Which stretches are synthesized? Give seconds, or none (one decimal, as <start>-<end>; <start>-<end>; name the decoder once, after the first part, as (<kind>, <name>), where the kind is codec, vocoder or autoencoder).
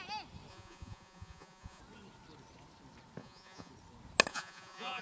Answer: 0.5-1.8 (vocoder, Vocos); 3.2-3.7; 4.3-5.0